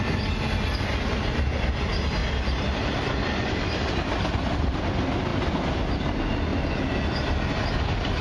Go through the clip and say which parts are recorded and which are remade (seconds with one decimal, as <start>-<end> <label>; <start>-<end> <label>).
0.0-2.2 recorded; 2.2-4.8 remade; 4.8-5.3 recorded; 5.3-5.8 remade; 5.8-8.2 recorded